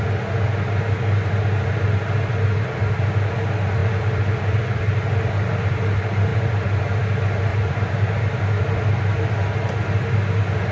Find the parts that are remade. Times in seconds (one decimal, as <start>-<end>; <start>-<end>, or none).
3.8-5.8; 6.3-6.8; 7.5-8.7